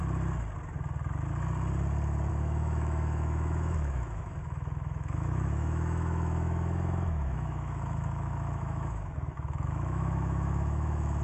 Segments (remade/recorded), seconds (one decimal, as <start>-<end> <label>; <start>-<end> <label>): 0.0-2.3 recorded; 2.3-11.2 remade